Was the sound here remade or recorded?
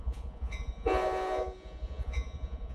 remade